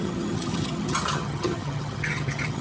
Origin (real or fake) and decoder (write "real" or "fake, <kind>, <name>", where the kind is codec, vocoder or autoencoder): fake, vocoder, HiFi-GAN